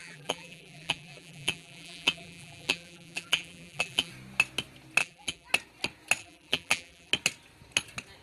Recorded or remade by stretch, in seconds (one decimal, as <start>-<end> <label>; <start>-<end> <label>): 0.0-4.1 remade; 4.1-5.0 recorded; 5.0-5.5 remade; 5.5-6.2 recorded; 6.2-7.1 remade; 7.1-8.2 recorded

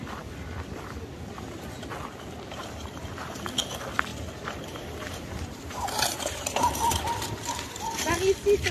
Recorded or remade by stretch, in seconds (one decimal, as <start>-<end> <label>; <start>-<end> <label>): 0.0-2.6 recorded; 2.6-3.4 remade; 3.4-4.1 recorded; 4.1-8.1 remade; 8.1-8.7 recorded

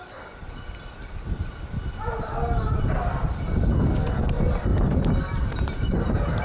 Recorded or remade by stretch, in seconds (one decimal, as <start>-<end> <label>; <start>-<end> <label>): 0.0-4.7 recorded; 4.7-6.4 remade

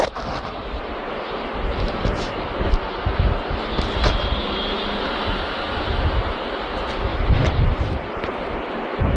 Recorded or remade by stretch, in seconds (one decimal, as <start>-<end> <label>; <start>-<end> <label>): 0.0-0.6 recorded; 0.6-1.3 remade; 1.3-7.1 recorded; 7.1-8.4 remade; 8.4-9.2 recorded

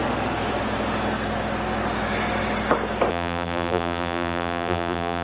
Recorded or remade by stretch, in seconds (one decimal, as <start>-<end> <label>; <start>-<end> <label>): 0.0-3.1 recorded; 3.1-5.2 remade

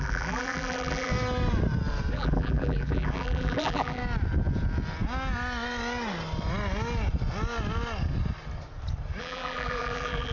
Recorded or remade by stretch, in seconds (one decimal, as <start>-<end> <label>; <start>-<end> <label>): 0.0-1.1 remade; 1.1-2.1 recorded; 2.1-4.0 remade; 4.0-9.2 recorded; 9.2-10.3 remade

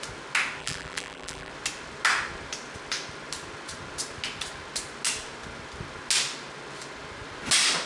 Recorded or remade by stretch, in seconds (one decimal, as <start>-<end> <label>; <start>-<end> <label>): 0.0-0.6 recorded; 0.6-1.5 remade; 1.5-7.8 recorded

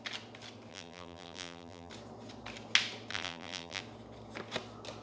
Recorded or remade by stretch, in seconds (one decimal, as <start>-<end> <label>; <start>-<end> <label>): 0.0-0.7 recorded; 0.7-1.9 remade; 1.9-3.1 recorded; 3.1-3.8 remade; 3.8-5.0 recorded